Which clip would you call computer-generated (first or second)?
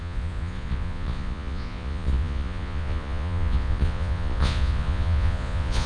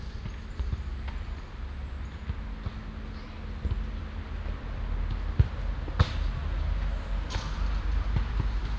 first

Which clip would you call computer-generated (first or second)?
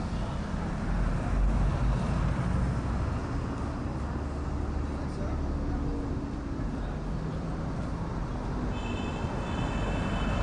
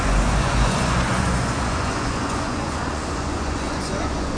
second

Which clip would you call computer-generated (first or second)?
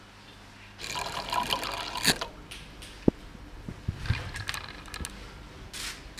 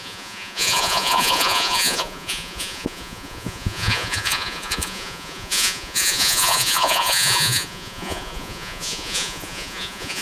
second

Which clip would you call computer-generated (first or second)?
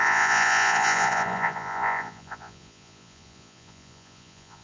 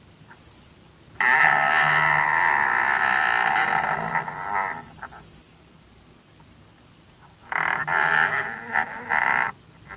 first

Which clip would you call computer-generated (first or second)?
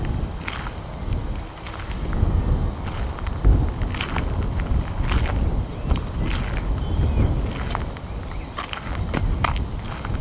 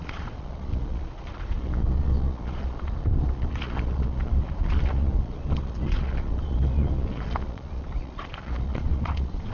second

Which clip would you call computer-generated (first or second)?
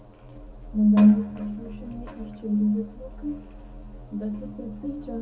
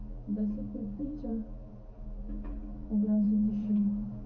second